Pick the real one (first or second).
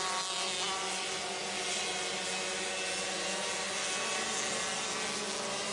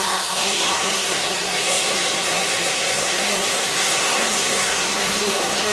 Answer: first